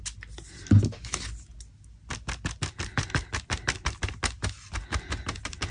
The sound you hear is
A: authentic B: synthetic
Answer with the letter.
A